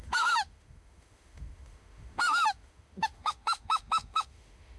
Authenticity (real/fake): fake